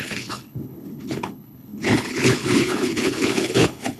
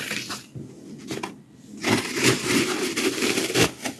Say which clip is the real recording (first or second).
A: second